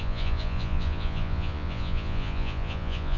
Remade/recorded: remade